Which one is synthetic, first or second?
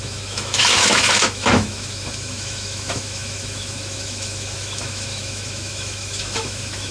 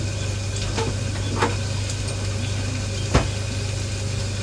first